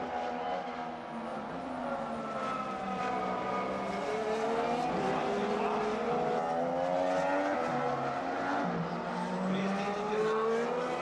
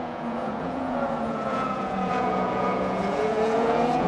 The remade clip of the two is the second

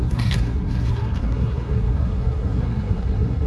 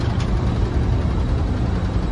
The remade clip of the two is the first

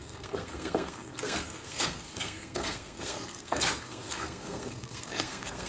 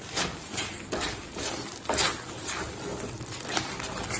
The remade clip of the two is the first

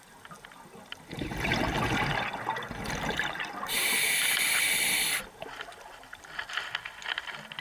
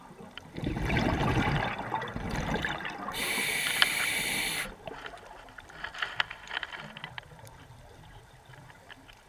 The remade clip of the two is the second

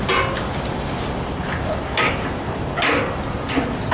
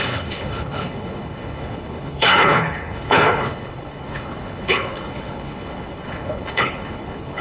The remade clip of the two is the second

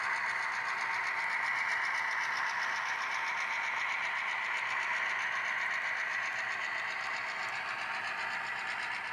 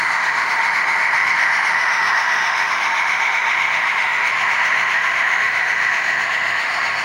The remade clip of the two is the second